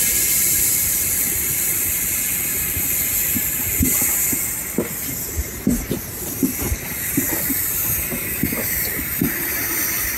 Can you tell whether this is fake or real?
real